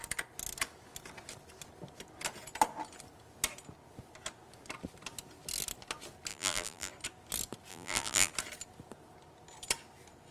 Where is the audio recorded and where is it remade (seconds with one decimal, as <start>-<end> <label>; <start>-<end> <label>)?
0.0-6.3 recorded; 6.3-6.9 remade; 6.9-7.7 recorded; 7.7-8.3 remade; 8.3-10.3 recorded